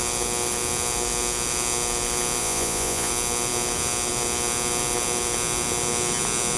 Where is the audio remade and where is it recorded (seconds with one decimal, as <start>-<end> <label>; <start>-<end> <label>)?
0.0-2.4 recorded; 2.4-3.1 remade; 3.1-6.6 recorded